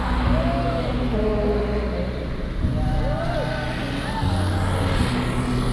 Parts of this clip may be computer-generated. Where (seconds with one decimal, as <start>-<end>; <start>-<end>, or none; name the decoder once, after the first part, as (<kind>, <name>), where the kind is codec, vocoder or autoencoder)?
none